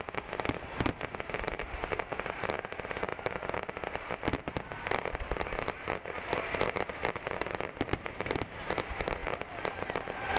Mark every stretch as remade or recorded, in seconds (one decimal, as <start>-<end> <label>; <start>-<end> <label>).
0.0-10.4 remade